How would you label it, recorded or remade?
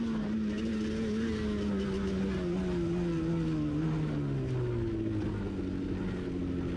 recorded